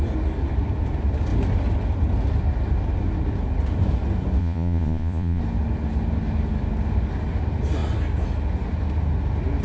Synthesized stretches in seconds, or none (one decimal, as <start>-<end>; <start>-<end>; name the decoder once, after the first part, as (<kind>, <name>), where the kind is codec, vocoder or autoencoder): 4.4-5.4 (vocoder, Vocos)

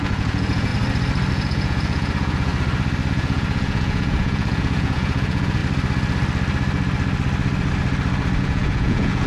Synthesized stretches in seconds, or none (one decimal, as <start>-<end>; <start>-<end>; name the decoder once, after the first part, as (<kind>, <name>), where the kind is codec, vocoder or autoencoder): 0.0-0.7 (vocoder, Vocos); 1.3-2.5; 3.1-5.6; 8.4-9.3

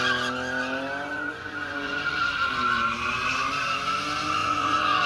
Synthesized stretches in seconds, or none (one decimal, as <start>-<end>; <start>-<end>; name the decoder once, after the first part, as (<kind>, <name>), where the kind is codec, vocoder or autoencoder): 1.1-2.3 (vocoder, Vocos); 4.4-5.1

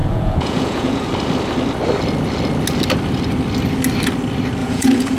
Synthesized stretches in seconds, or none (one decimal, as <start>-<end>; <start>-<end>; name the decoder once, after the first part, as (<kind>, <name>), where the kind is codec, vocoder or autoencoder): 0.0-1.1 (vocoder, Vocos); 4.6-5.2

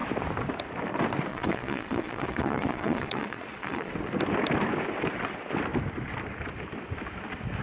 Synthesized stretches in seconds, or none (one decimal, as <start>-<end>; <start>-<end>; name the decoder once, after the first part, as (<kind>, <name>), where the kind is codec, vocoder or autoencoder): 1.3-3.9 (vocoder, Vocos)

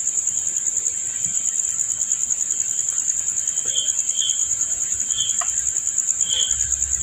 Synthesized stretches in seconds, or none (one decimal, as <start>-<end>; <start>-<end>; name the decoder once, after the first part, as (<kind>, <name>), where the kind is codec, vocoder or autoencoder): 4.4-5.0 (vocoder, Vocos)